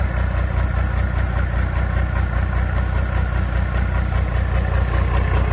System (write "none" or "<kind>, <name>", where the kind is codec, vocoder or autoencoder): none